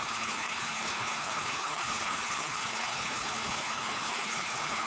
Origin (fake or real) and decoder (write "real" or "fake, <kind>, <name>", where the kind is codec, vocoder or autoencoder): fake, codec, HILCodec